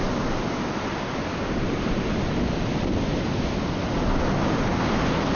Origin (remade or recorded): recorded